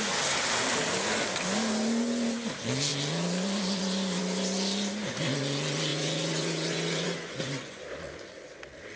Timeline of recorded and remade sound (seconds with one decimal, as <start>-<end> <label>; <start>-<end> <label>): 0.0-5.9 recorded; 5.9-7.8 remade; 7.8-9.0 recorded